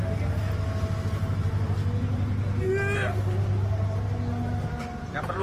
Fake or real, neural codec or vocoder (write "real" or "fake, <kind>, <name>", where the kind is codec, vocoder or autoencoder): real